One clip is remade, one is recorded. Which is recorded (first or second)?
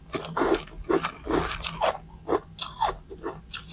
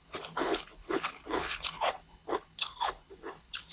first